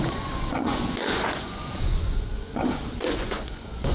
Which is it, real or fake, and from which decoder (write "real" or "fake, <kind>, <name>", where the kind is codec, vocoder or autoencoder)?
fake, vocoder, Vocos